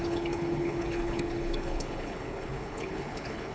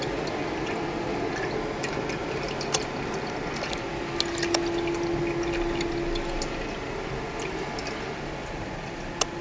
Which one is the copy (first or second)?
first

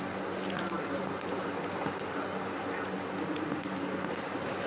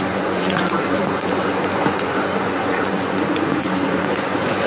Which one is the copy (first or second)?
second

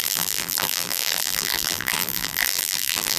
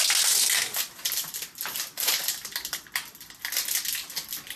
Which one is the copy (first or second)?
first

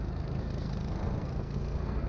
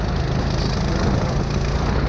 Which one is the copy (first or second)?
first